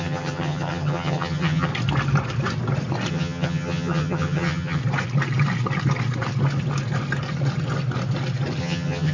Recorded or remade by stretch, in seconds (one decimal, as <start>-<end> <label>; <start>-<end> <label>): 0.0-1.7 remade; 1.7-3.1 recorded; 3.1-4.8 remade; 4.8-8.6 recorded; 8.6-9.1 remade